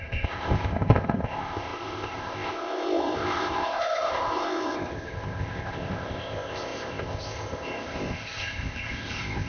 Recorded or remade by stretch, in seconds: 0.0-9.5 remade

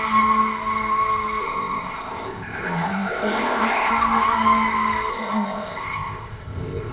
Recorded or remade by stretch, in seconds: 0.0-1.4 recorded; 1.4-3.9 remade; 3.9-5.1 recorded; 5.1-6.9 remade

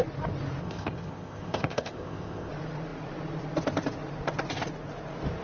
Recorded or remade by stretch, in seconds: 0.0-0.6 recorded; 0.6-2.5 remade; 2.5-5.4 recorded

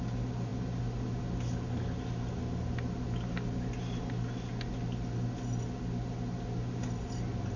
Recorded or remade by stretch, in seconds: 0.0-7.6 recorded

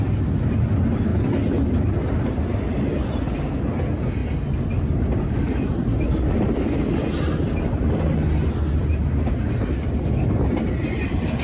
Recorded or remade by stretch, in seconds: 0.0-11.4 recorded

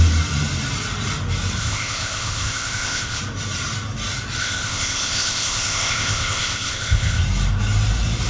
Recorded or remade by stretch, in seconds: 0.0-1.6 recorded; 1.6-3.2 remade; 3.2-4.4 recorded; 4.4-7.2 remade; 7.2-8.3 recorded